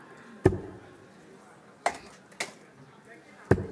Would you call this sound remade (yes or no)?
no